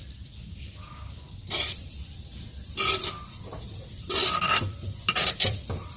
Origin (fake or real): fake